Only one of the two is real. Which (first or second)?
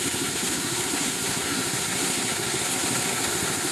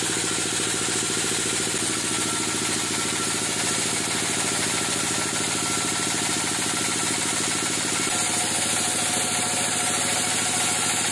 second